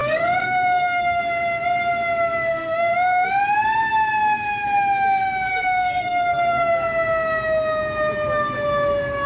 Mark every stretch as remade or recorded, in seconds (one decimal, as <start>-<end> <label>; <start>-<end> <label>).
0.0-1.2 remade; 1.2-2.5 recorded; 2.5-3.3 remade; 3.3-5.5 recorded; 5.5-6.7 remade; 6.7-9.3 recorded